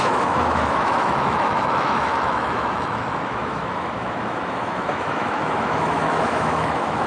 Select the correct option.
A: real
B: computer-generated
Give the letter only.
B